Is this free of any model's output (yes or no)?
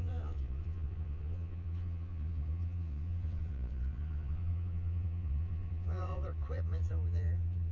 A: no